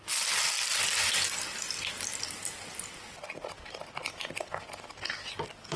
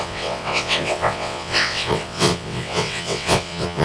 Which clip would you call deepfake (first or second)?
second